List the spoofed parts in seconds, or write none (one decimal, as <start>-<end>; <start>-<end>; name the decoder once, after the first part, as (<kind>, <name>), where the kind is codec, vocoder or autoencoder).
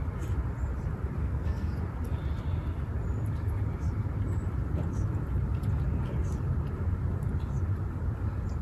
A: 1.2-1.8 (codec, SNAC)